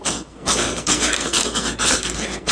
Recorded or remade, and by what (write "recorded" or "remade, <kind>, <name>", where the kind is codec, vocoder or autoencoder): remade, codec, SNAC